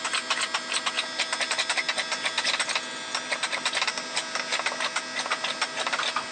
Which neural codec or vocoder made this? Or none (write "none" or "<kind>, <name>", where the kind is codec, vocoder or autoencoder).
none